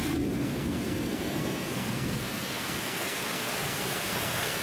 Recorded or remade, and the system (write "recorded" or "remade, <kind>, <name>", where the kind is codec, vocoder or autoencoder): remade, codec, SNAC